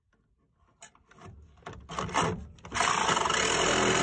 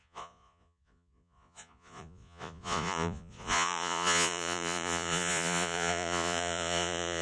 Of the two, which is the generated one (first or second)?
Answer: second